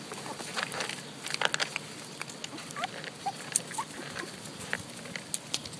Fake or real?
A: real